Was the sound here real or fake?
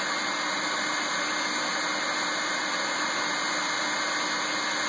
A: real